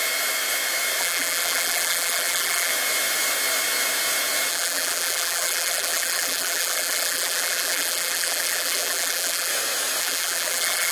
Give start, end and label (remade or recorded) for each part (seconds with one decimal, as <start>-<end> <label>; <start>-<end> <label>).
0.0-1.0 recorded; 1.0-2.7 remade; 2.7-4.5 recorded; 4.5-9.5 remade; 9.5-10.0 recorded; 10.0-10.9 remade